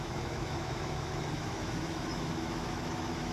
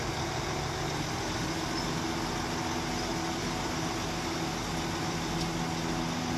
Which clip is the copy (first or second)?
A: first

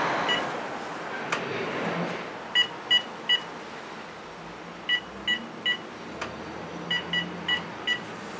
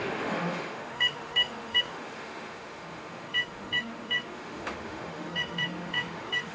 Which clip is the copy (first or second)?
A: second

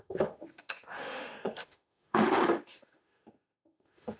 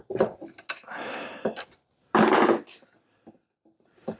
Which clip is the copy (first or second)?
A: first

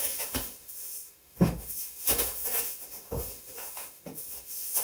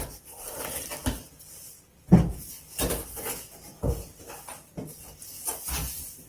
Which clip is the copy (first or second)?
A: first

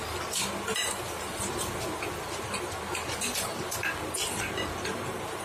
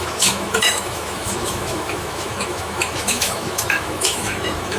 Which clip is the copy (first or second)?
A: second